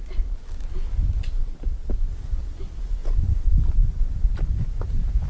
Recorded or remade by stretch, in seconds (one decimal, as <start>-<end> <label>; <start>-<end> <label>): 0.0-1.4 recorded; 1.4-2.1 remade; 2.1-3.0 recorded; 3.0-4.4 remade; 4.4-5.3 recorded